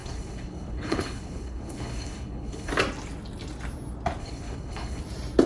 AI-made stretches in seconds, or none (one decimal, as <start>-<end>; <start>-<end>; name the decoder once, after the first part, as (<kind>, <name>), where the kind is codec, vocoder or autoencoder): 0.0-2.7 (codec, HILCodec); 4.2-5.0